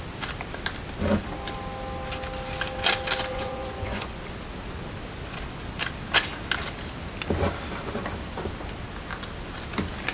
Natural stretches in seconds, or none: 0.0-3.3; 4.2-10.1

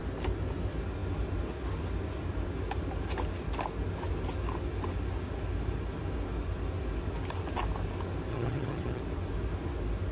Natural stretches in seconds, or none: 0.0-8.3; 9.0-10.1

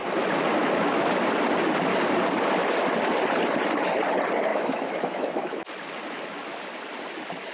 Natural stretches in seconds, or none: 0.0-4.5; 5.7-7.5

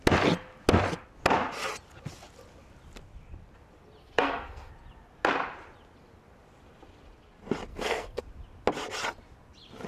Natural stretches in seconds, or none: 0.0-4.0; 4.7-7.7; 8.2-9.9

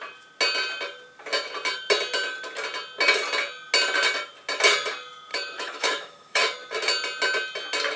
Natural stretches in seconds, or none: 0.0-5.3; 6.4-8.0

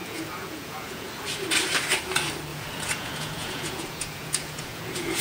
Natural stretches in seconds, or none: 1.1-2.5